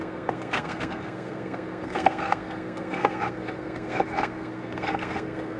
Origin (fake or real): fake